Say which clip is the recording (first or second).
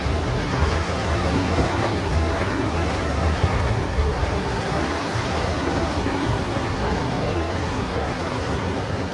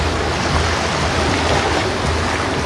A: second